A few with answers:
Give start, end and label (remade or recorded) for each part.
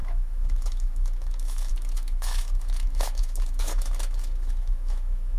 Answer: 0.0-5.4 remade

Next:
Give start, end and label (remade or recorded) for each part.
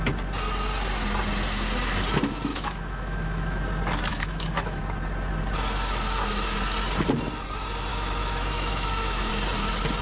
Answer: 0.0-2.5 recorded; 2.5-3.6 remade; 3.6-4.1 recorded; 4.1-4.8 remade; 4.8-7.9 recorded; 7.9-9.3 remade; 9.3-10.0 recorded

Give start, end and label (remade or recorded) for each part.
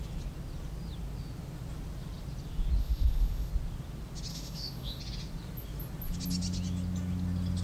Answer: 0.0-2.8 recorded; 2.8-3.5 remade; 3.5-4.3 recorded; 4.3-5.0 remade; 5.0-7.6 recorded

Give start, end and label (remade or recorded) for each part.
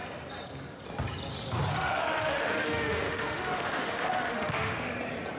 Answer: 0.0-1.7 recorded; 1.7-4.9 remade; 4.9-5.4 recorded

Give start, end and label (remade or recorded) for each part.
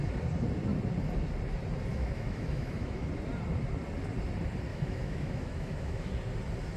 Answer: 0.0-1.9 recorded; 1.9-3.1 remade; 3.1-4.7 recorded; 4.7-6.1 remade; 6.1-6.8 recorded